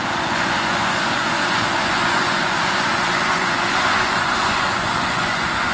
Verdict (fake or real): fake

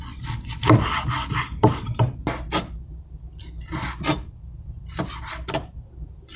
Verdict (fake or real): real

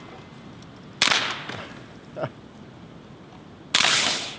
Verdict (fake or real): real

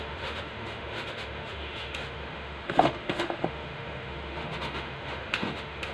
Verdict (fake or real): fake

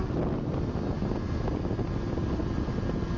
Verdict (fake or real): real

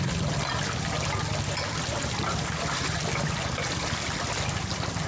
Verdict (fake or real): real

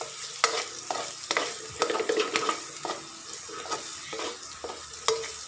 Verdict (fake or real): real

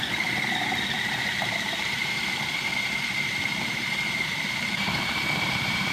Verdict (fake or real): fake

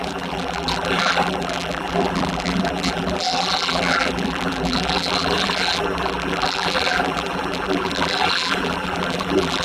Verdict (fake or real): fake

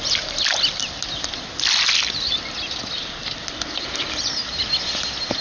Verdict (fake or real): real